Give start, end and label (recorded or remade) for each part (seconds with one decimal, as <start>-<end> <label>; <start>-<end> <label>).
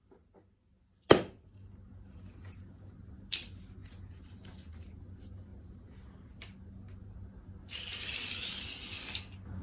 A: 0.0-9.6 recorded